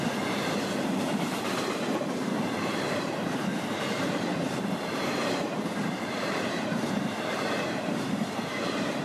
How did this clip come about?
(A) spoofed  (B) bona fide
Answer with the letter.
A